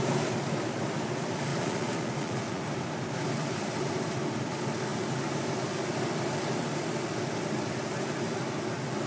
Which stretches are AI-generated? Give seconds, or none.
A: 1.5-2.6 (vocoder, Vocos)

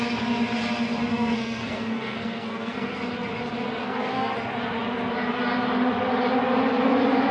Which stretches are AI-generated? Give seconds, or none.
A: 1.1-3.0 (codec, SNAC); 3.8-4.3

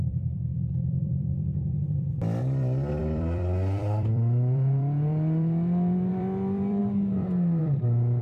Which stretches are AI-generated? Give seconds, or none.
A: 0.0-6.8 (vocoder, BigVGAN v2); 7.6-8.2

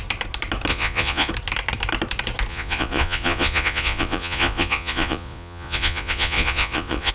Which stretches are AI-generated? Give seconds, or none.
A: 0.7-1.3 (vocoder, Vocos); 2.5-7.1

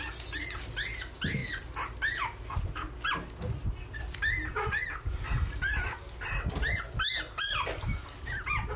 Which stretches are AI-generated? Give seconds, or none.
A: none